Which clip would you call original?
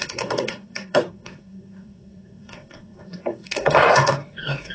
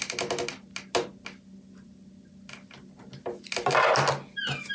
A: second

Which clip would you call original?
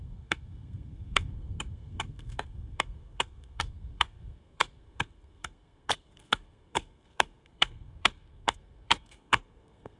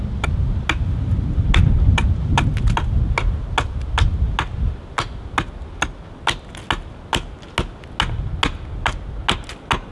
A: second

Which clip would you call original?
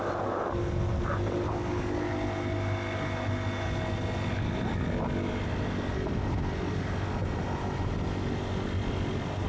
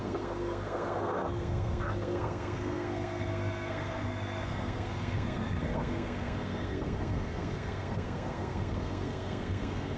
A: first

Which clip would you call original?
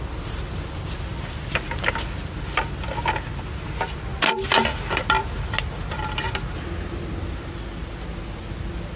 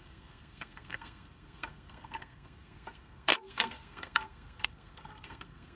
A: first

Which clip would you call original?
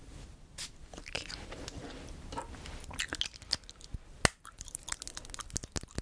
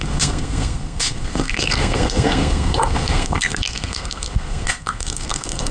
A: first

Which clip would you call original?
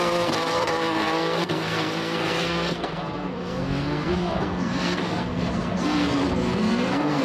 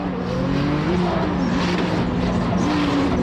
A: second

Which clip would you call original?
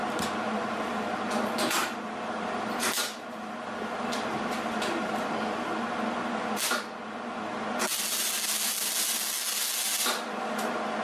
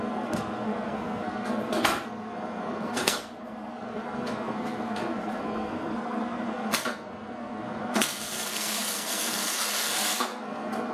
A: first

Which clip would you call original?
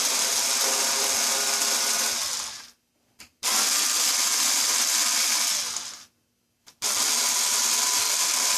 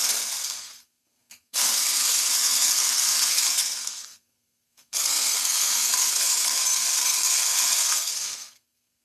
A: first